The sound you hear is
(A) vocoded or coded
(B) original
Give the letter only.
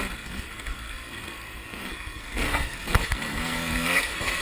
A